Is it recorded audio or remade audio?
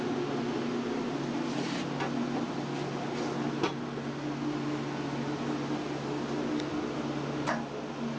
recorded